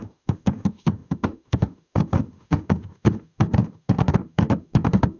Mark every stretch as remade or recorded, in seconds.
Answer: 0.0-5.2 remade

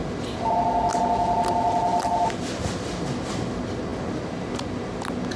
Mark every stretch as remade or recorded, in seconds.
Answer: 0.0-5.4 recorded

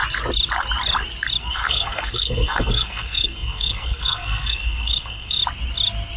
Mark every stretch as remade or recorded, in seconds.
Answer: 0.0-1.4 recorded; 1.4-5.4 remade; 5.4-6.2 recorded

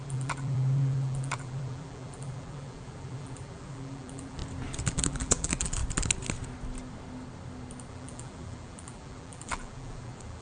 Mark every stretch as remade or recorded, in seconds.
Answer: 0.0-4.4 remade; 4.4-4.9 recorded; 4.9-5.8 remade; 5.8-7.9 recorded; 7.9-10.4 remade